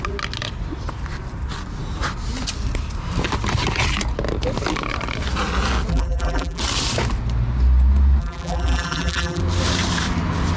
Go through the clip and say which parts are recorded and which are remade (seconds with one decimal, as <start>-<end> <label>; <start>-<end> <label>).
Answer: 0.0-5.9 recorded; 5.9-6.6 remade; 6.6-8.2 recorded; 8.2-9.4 remade; 9.4-10.6 recorded